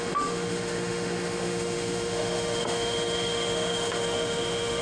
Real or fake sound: fake